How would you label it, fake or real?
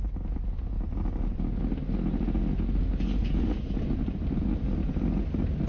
real